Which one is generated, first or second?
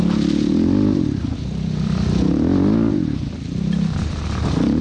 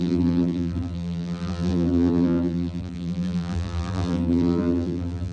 second